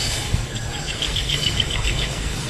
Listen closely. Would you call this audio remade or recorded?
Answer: remade